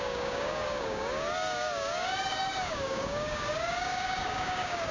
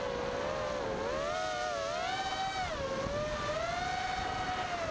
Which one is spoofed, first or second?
first